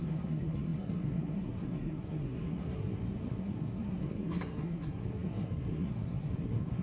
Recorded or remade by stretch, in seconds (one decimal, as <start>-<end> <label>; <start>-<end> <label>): 0.0-6.8 remade